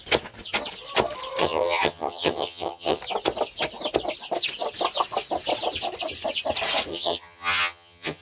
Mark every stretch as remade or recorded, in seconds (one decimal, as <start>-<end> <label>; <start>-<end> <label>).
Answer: 0.0-1.4 recorded; 1.4-3.0 remade; 3.0-6.9 recorded; 6.9-8.2 remade

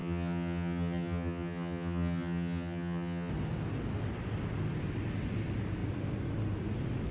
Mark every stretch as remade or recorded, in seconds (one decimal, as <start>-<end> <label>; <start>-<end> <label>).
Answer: 0.0-3.3 remade; 3.3-7.1 recorded

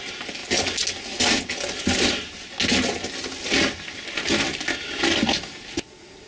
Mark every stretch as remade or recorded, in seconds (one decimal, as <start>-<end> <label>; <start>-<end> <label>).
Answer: 0.0-6.3 recorded

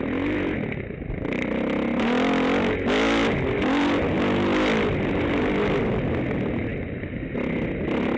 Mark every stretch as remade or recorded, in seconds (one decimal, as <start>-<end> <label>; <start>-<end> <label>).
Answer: 0.0-8.2 recorded